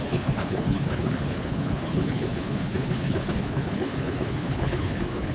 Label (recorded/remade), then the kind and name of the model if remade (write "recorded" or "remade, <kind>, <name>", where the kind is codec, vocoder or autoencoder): remade, codec, HILCodec